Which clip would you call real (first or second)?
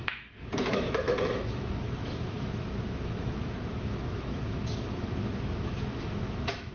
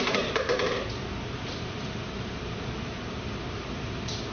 second